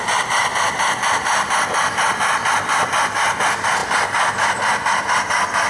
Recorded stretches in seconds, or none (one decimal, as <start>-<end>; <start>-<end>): 0.0-5.7